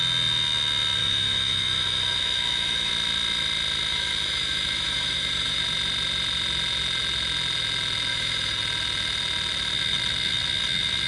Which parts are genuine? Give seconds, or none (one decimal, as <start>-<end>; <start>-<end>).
0.0-1.0; 2.9-3.9; 5.6-8.1; 8.6-11.1

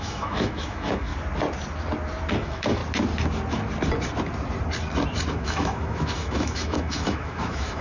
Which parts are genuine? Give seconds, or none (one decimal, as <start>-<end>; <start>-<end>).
1.1-2.3; 2.8-5.3